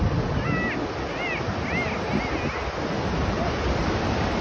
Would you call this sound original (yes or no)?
yes